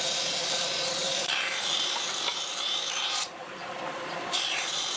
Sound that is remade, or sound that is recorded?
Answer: remade